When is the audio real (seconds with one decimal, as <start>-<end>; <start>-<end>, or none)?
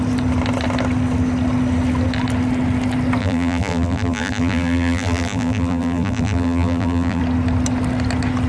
0.0-3.2; 7.2-8.5